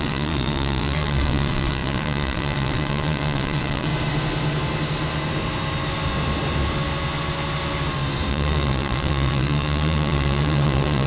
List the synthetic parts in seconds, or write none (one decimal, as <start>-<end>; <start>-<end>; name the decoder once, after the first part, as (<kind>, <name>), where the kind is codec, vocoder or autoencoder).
0.0-3.9 (vocoder, WaveNeXt); 8.3-11.1